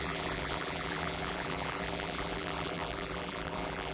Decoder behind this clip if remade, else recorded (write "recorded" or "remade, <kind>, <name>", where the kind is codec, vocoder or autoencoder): remade, vocoder, BigVGAN v2